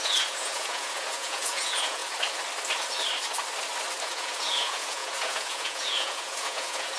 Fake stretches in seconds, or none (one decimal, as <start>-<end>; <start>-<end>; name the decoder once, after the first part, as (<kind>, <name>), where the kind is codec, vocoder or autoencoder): 0.0-2.0 (vocoder, Vocos); 4.0-7.0